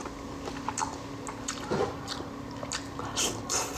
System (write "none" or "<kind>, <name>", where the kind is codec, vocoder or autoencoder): none